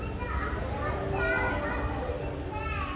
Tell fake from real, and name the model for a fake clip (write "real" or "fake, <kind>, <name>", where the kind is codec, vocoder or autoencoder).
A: real